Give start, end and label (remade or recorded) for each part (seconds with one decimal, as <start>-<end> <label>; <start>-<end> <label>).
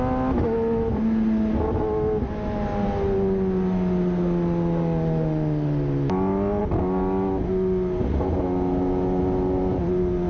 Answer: 0.0-10.3 recorded